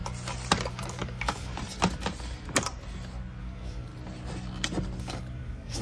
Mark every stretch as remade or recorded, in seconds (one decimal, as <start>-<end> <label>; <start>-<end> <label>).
0.0-0.7 recorded; 0.7-1.5 remade; 1.5-3.4 recorded; 3.4-3.9 remade; 3.9-5.0 recorded; 5.0-5.8 remade